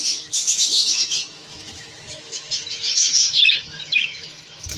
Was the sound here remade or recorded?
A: remade